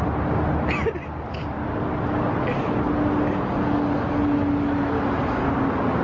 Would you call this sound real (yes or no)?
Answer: yes